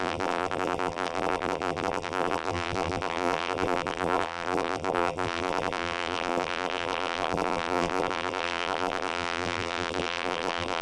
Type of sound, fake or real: fake